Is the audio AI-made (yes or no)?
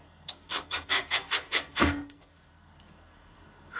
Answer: yes